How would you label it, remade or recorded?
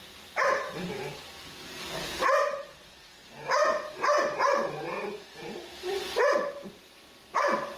recorded